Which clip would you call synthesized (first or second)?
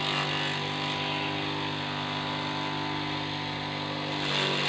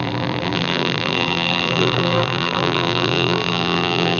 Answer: second